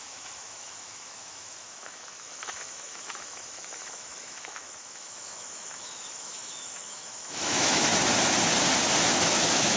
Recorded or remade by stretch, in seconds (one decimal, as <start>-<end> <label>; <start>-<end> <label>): 0.0-7.9 remade; 7.9-9.1 recorded; 9.1-9.8 remade